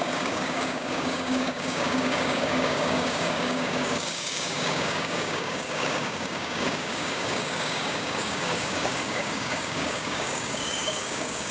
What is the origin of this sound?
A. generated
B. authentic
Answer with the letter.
A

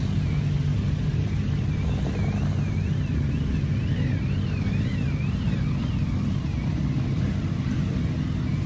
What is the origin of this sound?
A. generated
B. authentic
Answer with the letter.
B